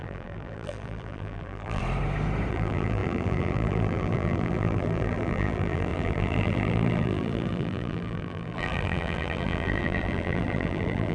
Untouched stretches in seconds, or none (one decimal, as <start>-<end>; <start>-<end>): 1.8-2.5